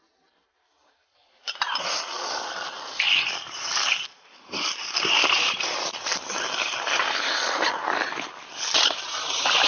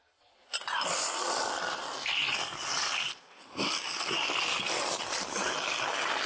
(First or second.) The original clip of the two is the second